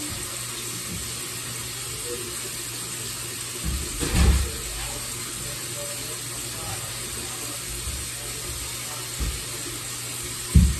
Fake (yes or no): no